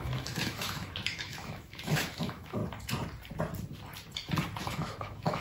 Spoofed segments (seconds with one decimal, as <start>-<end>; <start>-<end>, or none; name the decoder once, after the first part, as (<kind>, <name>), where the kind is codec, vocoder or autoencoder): 0.0-2.6 (autoencoder, DAC-VAE); 4.6-5.4